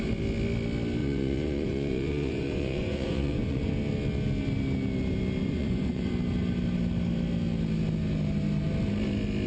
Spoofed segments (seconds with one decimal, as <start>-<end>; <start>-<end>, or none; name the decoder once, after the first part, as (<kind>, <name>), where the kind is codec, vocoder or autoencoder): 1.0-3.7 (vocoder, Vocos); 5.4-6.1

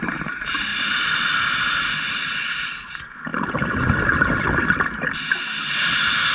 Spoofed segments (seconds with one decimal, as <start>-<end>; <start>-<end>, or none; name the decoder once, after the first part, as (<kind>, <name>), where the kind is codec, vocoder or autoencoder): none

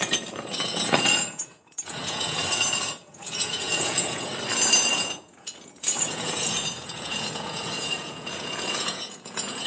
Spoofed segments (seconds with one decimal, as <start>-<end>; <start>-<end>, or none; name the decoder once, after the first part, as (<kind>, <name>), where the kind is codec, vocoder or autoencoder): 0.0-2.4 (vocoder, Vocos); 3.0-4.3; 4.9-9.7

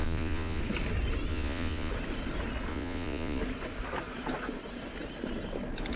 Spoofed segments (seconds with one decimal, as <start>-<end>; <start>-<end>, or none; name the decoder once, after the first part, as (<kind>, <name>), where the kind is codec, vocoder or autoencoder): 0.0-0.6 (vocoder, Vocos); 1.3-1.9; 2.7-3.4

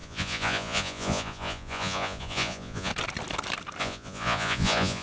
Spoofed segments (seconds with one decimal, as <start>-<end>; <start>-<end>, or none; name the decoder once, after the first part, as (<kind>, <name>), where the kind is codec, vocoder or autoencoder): 0.0-2.9 (vocoder, Vocos); 3.8-5.0

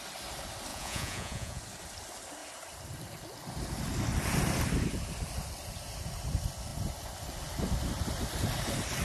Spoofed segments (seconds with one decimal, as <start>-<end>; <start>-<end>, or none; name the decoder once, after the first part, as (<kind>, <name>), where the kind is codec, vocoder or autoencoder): 0.7-1.6 (vocoder, Vocos)